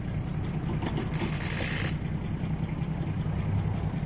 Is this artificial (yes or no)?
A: no